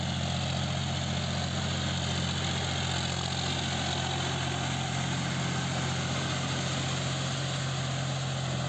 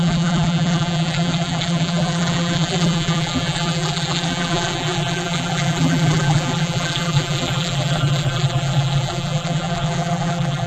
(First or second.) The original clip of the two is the first